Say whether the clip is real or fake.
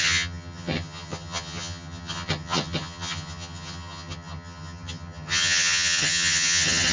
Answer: fake